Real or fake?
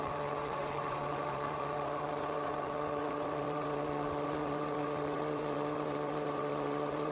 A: fake